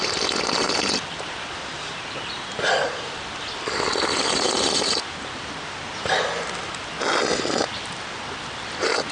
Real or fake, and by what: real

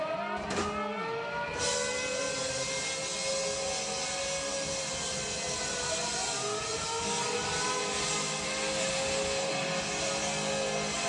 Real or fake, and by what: real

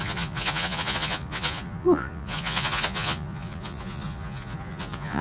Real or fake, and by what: fake, vocoder, Vocos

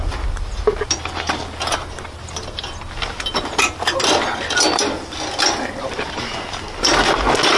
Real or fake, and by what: real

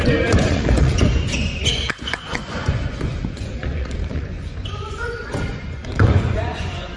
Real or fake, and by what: fake, vocoder, Vocos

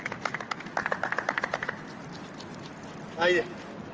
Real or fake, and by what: real